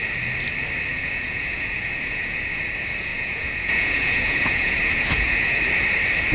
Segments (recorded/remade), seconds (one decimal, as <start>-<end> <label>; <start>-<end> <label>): 0.0-0.9 recorded; 0.9-2.6 remade; 2.6-3.1 recorded; 3.1-5.6 remade; 5.6-6.3 recorded

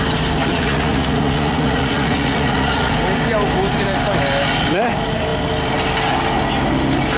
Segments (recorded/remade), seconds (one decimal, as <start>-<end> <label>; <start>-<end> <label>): 0.0-0.4 recorded; 0.4-2.9 remade; 2.9-7.2 recorded

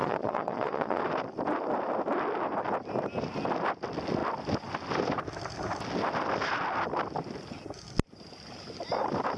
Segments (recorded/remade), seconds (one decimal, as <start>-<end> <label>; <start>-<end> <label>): 0.0-1.0 remade; 1.0-9.4 recorded

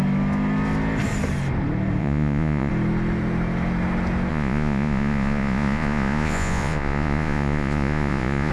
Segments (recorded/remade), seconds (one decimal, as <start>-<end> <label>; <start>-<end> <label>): 0.0-2.0 recorded; 2.0-2.7 remade; 2.7-4.3 recorded; 4.3-8.5 remade